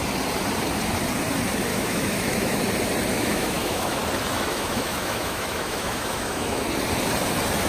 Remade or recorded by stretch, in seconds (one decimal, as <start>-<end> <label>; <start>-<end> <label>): 0.0-1.7 recorded; 1.7-2.6 remade; 2.6-3.1 recorded; 3.1-4.0 remade; 4.0-4.5 recorded; 4.5-6.6 remade; 6.6-7.7 recorded